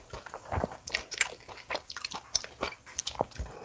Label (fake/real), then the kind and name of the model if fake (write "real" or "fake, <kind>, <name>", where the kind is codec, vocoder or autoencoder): real